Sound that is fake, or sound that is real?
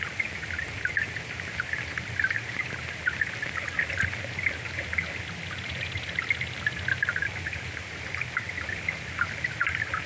real